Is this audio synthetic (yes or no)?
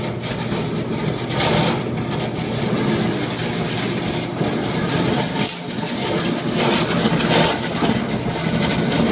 no